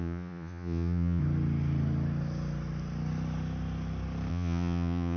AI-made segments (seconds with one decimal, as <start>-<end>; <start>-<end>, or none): 0.0-1.2; 4.3-5.2